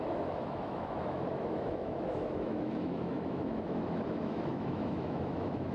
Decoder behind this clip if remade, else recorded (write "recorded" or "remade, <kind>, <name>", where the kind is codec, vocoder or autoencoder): remade, autoencoder, DAC-VAE